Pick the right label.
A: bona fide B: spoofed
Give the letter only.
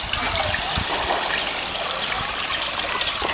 A